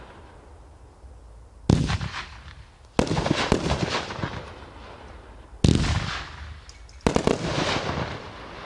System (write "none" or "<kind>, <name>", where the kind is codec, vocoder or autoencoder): none